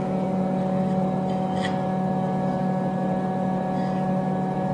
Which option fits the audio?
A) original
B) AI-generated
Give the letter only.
A